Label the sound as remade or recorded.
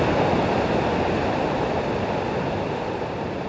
recorded